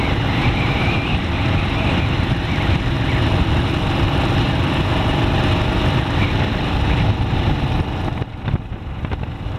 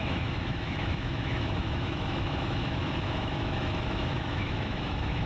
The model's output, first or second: second